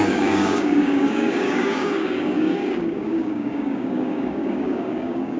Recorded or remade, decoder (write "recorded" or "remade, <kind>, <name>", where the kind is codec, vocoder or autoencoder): remade, codec, DAC